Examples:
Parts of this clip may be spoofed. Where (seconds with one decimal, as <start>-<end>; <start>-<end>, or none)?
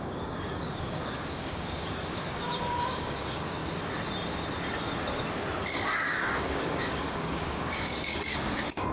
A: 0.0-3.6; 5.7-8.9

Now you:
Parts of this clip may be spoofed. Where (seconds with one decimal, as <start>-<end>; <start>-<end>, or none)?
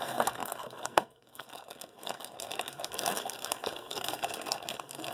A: 0.0-5.1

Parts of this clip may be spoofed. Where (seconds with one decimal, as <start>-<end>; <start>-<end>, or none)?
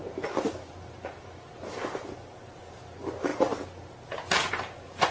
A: none